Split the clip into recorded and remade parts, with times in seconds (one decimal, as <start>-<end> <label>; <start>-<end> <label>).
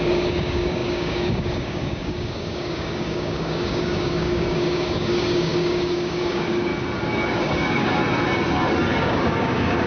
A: 0.0-6.7 remade; 6.7-7.3 recorded; 7.3-8.0 remade; 8.0-9.0 recorded; 9.0-9.9 remade